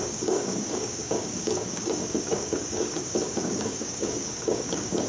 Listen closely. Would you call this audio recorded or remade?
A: remade